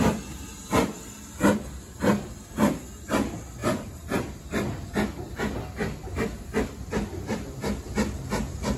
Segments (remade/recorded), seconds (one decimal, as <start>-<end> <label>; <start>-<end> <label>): 0.0-3.6 recorded; 3.6-4.4 remade; 4.4-8.8 recorded